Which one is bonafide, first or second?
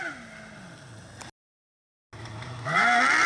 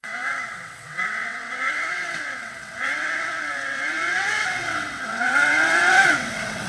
first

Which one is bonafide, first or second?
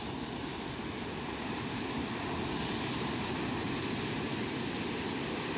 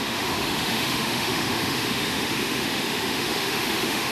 first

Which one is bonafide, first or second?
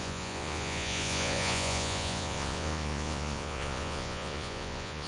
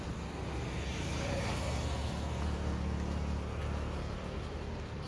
second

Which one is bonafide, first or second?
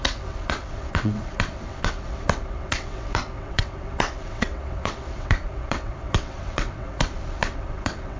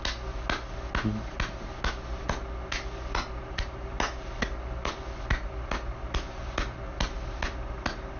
second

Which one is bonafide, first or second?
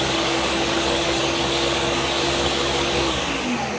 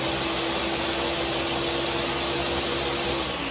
second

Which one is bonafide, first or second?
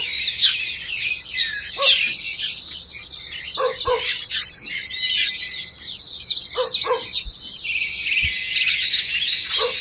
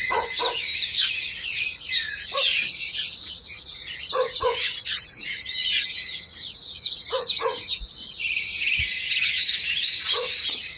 first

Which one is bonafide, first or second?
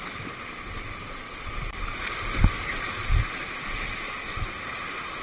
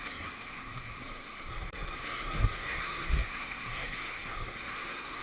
first